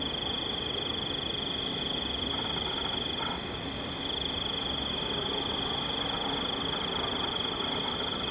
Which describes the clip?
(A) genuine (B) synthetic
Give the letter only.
A